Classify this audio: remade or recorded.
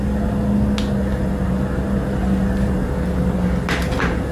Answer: recorded